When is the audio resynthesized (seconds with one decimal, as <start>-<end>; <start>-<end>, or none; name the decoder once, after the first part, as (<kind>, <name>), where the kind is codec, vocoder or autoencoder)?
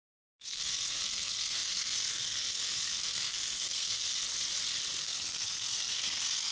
0.0-4.1 (codec, SNAC); 5.0-6.5